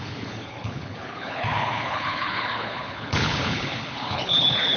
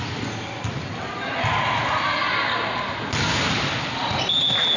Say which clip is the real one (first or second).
second